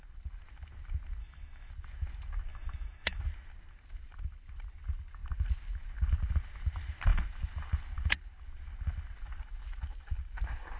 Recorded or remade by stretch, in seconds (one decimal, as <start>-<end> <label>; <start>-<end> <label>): 0.0-1.2 recorded; 1.2-1.7 remade; 1.7-2.5 recorded; 2.5-3.2 remade; 3.2-10.8 recorded